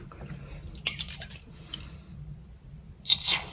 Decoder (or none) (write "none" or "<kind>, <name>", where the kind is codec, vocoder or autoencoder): none